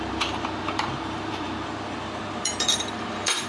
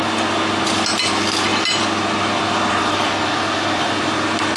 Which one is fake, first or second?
first